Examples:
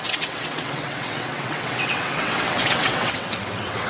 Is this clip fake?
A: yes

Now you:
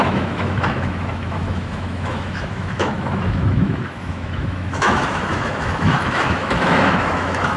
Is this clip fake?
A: yes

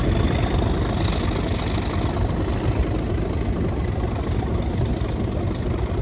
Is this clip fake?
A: no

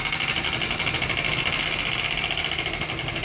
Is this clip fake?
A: no